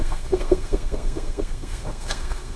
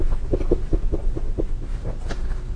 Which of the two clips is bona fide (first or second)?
second